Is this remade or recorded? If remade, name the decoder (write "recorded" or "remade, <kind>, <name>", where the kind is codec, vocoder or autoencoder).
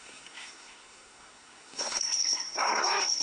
remade, codec, SNAC